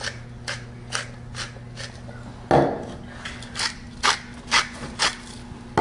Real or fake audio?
real